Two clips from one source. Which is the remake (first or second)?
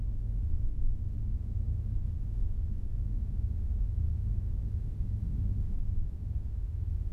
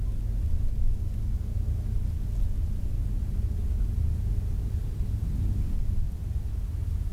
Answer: first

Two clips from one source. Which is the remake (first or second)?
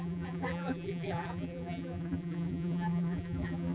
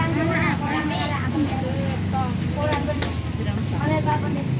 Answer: first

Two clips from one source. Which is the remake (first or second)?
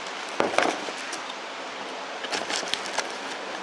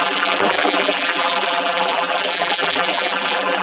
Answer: second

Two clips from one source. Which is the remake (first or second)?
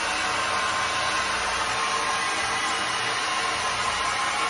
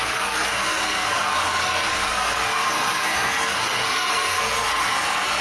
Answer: second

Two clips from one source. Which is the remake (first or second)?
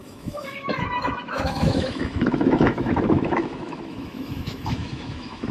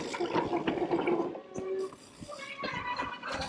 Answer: first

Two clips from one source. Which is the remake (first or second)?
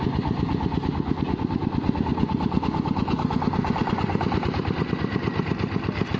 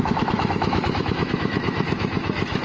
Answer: second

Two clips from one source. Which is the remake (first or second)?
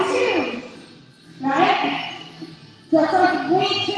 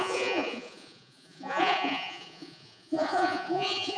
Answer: second